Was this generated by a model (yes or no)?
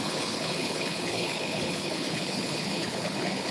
yes